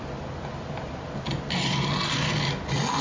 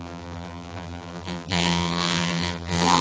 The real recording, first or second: first